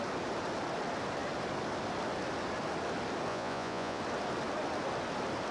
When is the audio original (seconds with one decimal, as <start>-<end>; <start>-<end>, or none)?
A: 0.0-3.3; 4.0-5.5